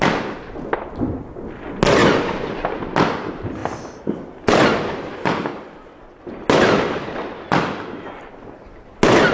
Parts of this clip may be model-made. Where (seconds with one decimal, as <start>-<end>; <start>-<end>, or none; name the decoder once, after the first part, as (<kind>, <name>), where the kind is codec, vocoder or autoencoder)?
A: none